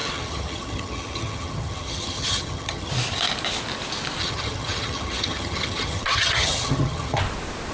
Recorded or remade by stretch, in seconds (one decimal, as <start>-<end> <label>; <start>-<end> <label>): 0.0-2.9 remade; 2.9-4.2 recorded; 4.2-7.2 remade; 7.2-7.7 recorded

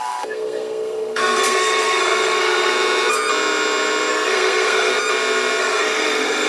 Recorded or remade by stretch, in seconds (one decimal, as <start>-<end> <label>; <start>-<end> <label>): 0.0-2.7 remade; 2.7-4.1 recorded; 4.1-4.9 remade; 4.9-5.6 recorded; 5.6-6.5 remade

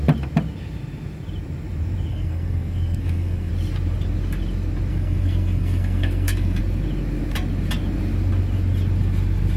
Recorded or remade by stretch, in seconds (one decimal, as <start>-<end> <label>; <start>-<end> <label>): 0.0-2.1 recorded; 2.1-3.5 remade; 3.5-4.9 recorded; 4.9-6.6 remade; 6.6-9.6 recorded

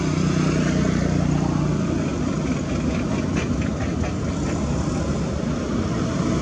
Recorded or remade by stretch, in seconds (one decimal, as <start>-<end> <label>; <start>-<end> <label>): 0.0-6.4 recorded

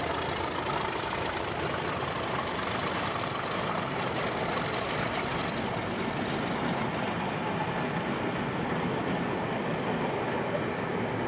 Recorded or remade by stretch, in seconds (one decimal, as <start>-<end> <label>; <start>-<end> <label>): 0.0-11.3 recorded

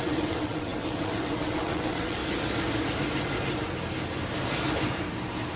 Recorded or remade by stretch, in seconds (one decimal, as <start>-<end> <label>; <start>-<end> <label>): 0.0-2.2 remade; 2.2-5.6 recorded

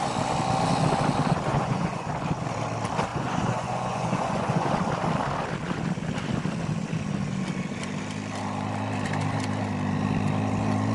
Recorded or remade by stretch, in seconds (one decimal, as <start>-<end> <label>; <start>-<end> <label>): 0.0-1.5 recorded; 1.5-2.1 remade; 2.1-3.1 recorded; 3.1-4.7 remade; 4.7-10.9 recorded